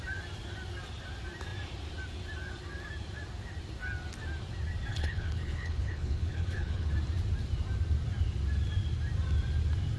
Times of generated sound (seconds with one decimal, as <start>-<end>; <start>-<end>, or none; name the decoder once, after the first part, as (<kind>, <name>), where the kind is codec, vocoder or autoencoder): 4.9-6.9 (codec, HILCodec)